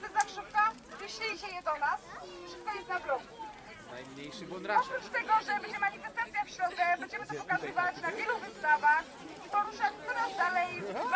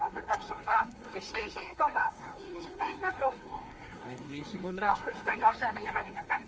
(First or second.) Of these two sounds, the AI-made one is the second